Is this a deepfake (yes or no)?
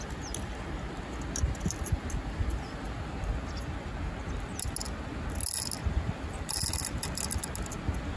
no